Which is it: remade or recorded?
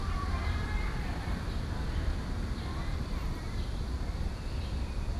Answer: remade